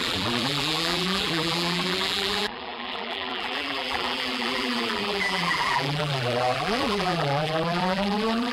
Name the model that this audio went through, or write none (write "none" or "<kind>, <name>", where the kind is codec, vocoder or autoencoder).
vocoder, BigVGAN v2